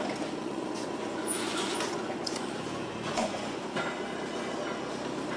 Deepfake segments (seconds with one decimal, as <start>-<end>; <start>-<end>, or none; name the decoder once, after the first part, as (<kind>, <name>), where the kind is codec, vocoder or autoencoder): 0.4-3.6 (vocoder, Vocos)